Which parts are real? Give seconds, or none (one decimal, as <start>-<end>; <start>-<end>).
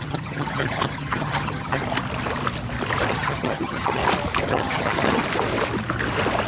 1.8-3.1; 4.0-4.5; 5.2-6.5